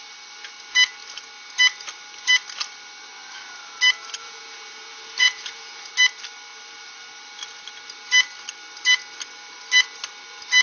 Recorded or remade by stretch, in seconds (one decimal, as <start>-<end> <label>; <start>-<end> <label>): 0.0-4.2 recorded; 4.2-5.9 remade; 5.9-10.6 recorded